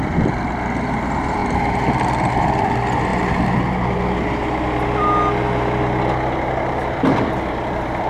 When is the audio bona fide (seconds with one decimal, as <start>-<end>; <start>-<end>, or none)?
1.4-2.3; 3.1-6.8